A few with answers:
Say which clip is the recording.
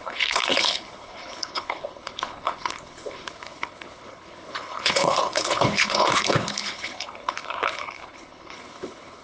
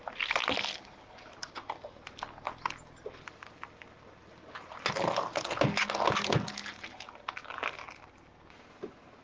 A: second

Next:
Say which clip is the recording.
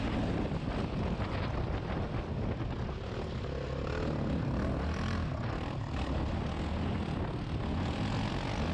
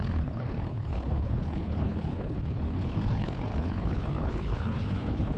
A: first